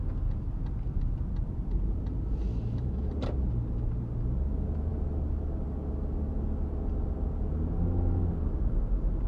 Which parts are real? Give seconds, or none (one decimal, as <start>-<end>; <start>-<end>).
0.0-2.5; 3.1-9.3